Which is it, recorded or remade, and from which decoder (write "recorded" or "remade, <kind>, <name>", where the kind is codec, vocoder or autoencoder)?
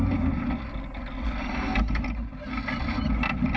recorded